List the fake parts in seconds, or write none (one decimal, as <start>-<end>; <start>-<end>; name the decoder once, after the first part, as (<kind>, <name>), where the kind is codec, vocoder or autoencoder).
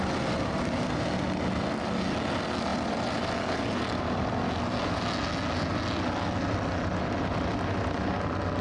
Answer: 2.7-4.3 (vocoder, BigVGAN v2)